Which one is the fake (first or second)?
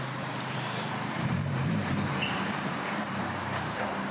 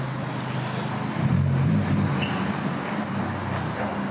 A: first